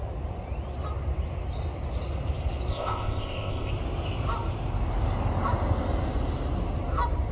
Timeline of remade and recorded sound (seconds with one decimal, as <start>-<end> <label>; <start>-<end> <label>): 0.0-2.7 recorded; 2.7-3.7 remade; 3.7-7.3 recorded